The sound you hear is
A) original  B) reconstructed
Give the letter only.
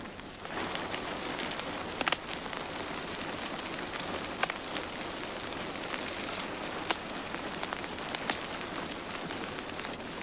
A